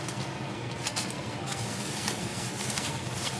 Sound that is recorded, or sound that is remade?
remade